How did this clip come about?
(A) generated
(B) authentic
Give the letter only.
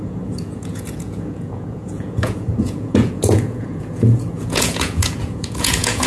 A